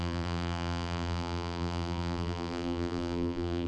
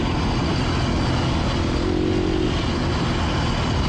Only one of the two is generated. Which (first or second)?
first